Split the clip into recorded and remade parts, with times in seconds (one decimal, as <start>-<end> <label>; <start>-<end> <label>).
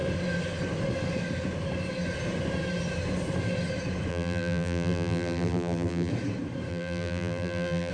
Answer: 0.0-4.1 recorded; 4.1-6.1 remade; 6.1-6.7 recorded; 6.7-7.9 remade